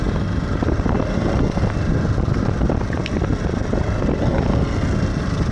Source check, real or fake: real